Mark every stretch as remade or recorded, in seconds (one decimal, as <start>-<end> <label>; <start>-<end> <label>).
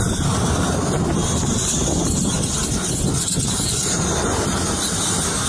0.0-5.5 recorded